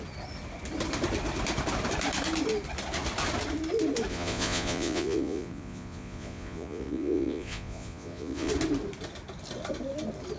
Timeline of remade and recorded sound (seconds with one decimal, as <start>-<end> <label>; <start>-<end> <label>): 0.0-4.1 recorded; 4.1-8.5 remade; 8.5-10.4 recorded